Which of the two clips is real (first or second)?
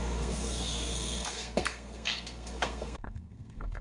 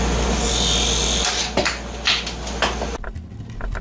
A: second